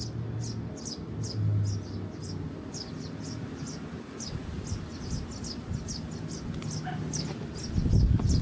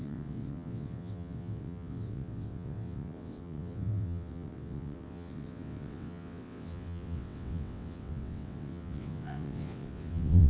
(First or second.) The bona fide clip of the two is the first